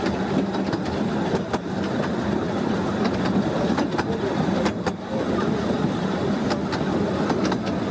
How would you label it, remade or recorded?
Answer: recorded